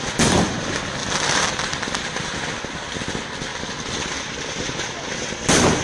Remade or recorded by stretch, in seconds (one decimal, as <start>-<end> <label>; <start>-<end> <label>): 0.0-1.0 recorded; 1.0-1.6 remade; 1.6-5.8 recorded